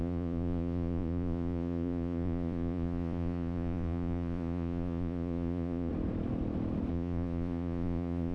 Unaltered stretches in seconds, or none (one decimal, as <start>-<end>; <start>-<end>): 5.9-6.9